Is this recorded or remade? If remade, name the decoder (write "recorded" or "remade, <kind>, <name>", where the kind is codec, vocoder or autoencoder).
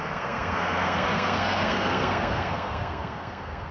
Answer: remade, codec, SNAC